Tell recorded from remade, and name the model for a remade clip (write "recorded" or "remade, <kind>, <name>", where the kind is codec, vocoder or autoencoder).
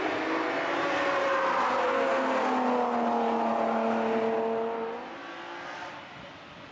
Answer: recorded